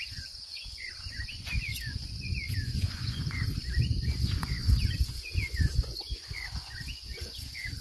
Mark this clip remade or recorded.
remade